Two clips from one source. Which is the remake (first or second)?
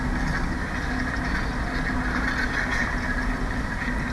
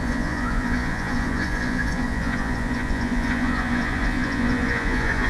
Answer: second